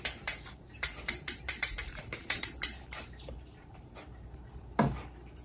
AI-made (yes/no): yes